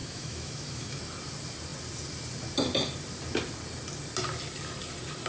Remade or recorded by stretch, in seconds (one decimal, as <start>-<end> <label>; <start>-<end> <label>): 0.0-1.0 remade; 1.0-5.3 recorded